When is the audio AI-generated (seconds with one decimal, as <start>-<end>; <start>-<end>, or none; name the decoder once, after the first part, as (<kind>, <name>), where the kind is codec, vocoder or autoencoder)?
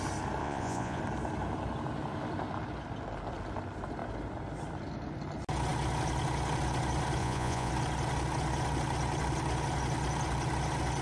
0.4-1.0 (vocoder, Vocos); 7.2-7.7